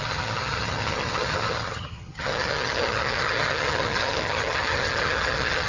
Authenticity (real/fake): fake